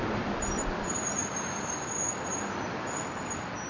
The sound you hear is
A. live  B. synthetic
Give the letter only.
A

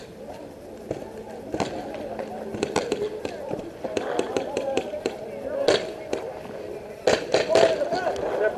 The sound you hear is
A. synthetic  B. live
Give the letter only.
B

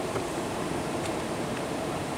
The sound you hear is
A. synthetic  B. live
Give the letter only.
A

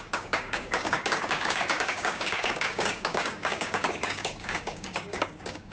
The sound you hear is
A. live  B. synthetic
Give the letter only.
B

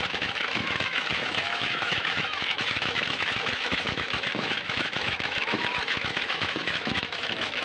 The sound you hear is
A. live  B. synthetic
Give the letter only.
B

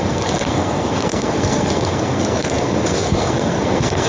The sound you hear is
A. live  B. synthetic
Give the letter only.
B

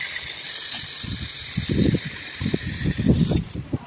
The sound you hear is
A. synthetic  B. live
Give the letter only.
A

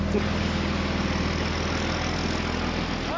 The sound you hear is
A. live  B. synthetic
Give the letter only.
A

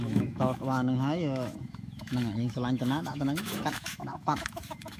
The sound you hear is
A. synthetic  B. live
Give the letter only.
A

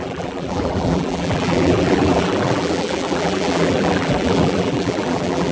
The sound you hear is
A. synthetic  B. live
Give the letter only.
A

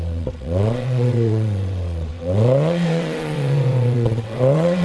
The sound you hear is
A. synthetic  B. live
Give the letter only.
A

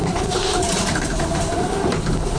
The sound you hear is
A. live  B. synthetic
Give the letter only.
B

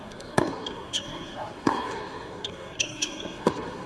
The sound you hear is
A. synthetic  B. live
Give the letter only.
A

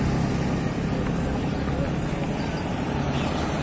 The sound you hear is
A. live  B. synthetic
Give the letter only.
A